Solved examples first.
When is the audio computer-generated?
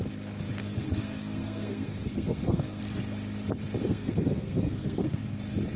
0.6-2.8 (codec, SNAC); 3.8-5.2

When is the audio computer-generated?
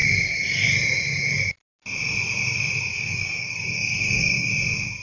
2.9-4.5 (codec, DAC)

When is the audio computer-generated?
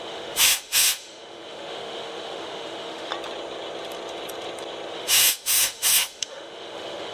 0.0-3.1 (autoencoder, DAC-VAE); 4.9-7.1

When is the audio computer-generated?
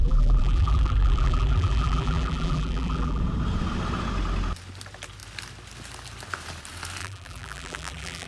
0.0-3.2 (vocoder, BigVGAN v2); 7.0-8.3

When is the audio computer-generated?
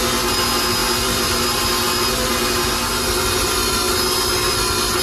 none